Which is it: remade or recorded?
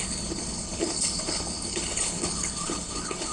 remade